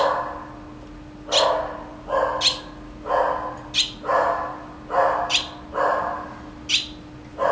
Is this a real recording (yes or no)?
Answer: yes